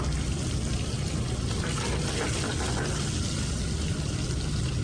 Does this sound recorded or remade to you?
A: recorded